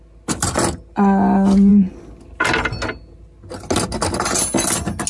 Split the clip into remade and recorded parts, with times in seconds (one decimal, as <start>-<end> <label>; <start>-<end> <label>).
0.0-5.1 recorded